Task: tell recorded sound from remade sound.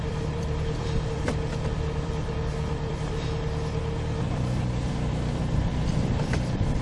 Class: remade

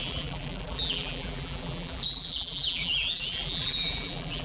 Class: remade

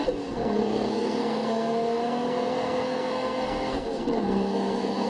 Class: remade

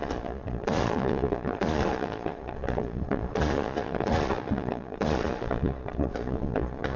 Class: remade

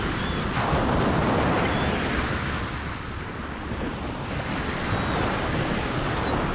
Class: recorded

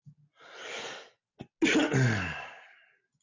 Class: recorded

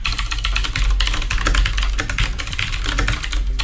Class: recorded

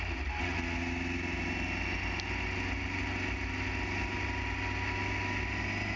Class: recorded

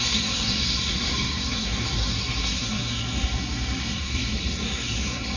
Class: remade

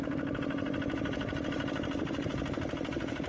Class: recorded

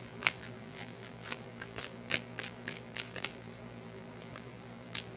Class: remade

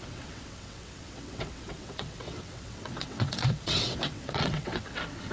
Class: remade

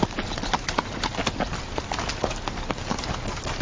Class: recorded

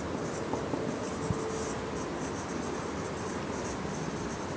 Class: recorded